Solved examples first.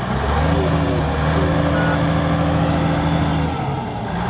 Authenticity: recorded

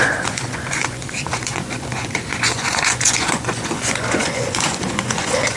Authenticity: remade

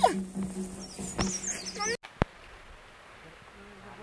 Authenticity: recorded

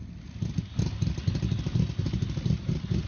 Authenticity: recorded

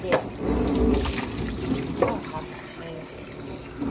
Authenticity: recorded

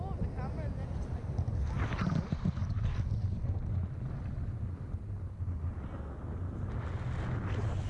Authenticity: recorded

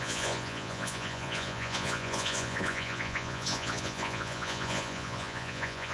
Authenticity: remade